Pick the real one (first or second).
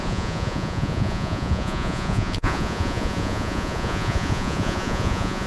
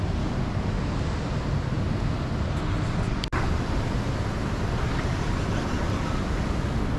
second